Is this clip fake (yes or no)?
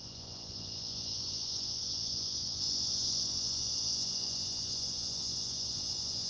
yes